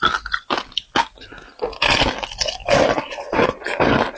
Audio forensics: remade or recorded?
recorded